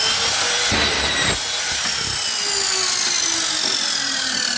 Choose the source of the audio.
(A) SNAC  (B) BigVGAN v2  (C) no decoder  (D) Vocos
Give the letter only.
C